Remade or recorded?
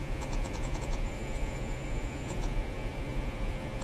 remade